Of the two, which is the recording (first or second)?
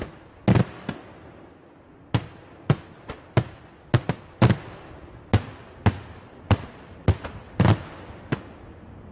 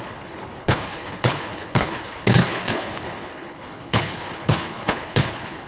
first